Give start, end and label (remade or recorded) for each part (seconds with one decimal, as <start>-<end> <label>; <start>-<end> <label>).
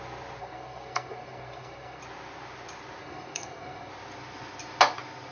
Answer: 0.0-0.4 recorded; 0.4-2.0 remade; 2.0-3.0 recorded; 3.0-3.9 remade; 3.9-5.3 recorded